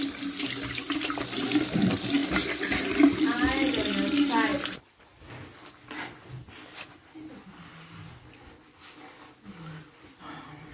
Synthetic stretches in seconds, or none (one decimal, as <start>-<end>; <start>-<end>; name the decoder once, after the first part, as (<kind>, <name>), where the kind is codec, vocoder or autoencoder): none